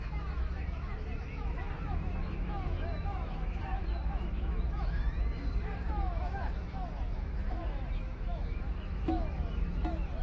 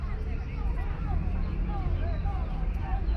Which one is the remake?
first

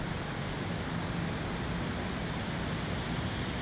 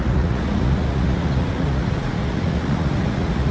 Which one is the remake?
second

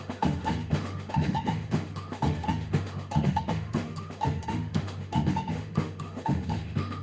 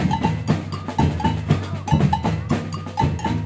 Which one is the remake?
first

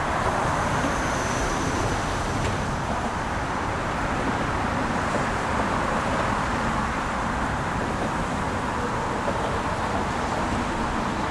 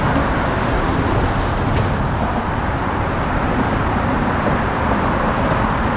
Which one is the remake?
first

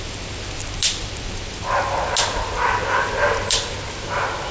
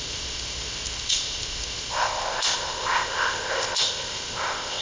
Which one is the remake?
second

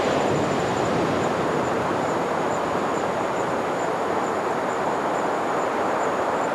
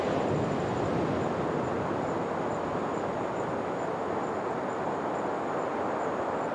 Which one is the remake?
first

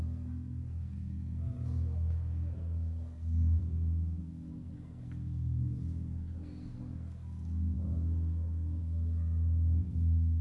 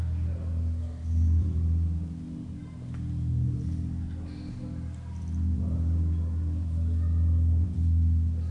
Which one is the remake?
first